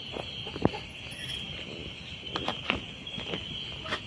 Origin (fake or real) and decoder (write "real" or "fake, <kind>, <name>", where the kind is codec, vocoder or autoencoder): real